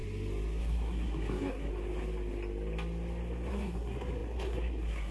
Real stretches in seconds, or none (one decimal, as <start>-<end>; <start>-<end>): 0.0-0.6; 1.7-3.5